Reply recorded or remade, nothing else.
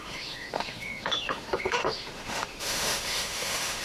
remade